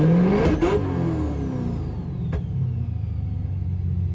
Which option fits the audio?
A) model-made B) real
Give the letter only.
B